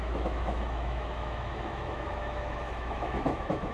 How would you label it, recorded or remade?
remade